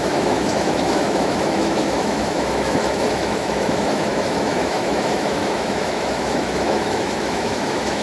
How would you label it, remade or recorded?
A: remade